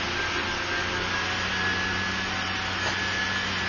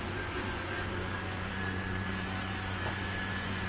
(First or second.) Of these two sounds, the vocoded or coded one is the second